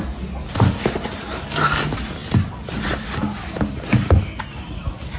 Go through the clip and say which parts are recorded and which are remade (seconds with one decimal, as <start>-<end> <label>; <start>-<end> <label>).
0.0-5.2 recorded